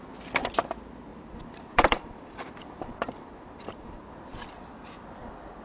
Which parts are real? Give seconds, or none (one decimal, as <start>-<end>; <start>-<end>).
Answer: 0.0-1.1; 4.5-5.6